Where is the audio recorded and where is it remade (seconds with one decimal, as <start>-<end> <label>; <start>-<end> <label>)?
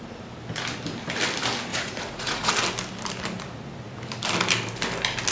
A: 0.0-1.7 recorded; 1.7-2.5 remade; 2.5-5.3 recorded